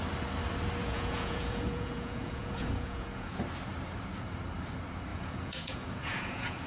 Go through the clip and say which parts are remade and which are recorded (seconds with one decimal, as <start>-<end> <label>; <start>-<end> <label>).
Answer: 0.0-0.8 recorded; 0.8-3.4 remade; 3.4-5.1 recorded; 5.1-6.7 remade